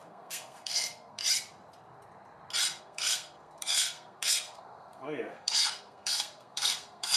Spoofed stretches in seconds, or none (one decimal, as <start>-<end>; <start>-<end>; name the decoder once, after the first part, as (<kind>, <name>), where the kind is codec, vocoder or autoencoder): 0.0-1.2 (codec, SNAC); 2.8-7.2